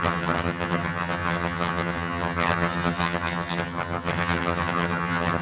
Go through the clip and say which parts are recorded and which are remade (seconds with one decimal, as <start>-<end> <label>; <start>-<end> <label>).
0.0-5.4 remade